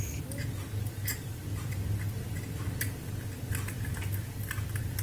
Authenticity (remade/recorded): recorded